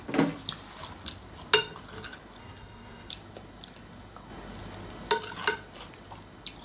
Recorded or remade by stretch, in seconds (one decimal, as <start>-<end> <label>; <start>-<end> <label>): 0.0-2.4 recorded; 2.4-3.1 remade; 3.1-6.6 recorded